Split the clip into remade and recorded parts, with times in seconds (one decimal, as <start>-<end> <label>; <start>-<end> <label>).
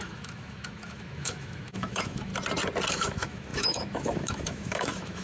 0.0-2.3 remade; 2.3-2.9 recorded; 2.9-5.2 remade